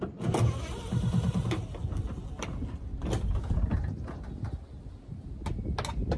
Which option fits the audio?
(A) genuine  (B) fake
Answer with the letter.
A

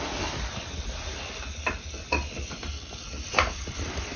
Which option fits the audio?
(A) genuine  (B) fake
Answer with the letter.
A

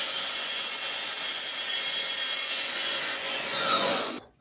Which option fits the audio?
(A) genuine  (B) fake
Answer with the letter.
B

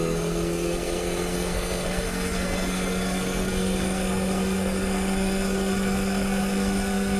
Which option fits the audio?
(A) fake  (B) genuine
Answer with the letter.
A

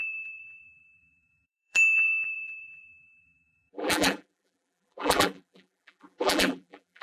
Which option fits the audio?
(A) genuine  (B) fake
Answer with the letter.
B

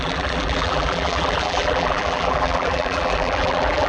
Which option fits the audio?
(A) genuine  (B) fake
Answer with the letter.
B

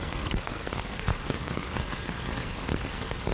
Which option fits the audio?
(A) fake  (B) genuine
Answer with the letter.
A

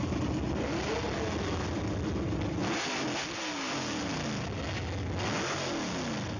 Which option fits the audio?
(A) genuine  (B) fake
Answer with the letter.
A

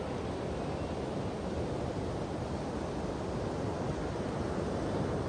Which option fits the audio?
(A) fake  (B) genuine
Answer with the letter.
B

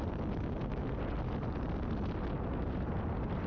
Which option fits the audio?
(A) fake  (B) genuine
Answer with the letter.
B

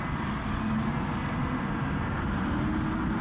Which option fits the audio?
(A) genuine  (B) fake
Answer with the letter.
A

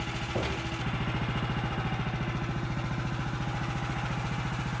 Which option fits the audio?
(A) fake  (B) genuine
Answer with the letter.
B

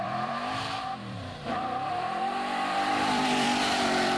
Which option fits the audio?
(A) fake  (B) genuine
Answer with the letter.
A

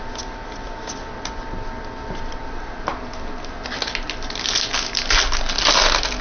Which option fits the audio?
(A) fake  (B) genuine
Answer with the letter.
B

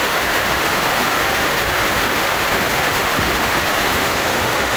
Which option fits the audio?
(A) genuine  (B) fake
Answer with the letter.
B